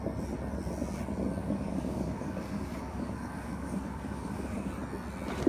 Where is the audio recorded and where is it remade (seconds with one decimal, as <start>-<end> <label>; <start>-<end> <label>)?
0.0-1.4 recorded; 1.4-4.7 remade; 4.7-5.5 recorded